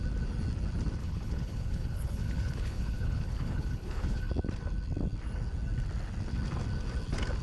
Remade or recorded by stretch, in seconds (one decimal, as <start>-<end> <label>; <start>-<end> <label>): 0.0-1.0 recorded; 1.0-4.3 remade; 4.3-7.4 recorded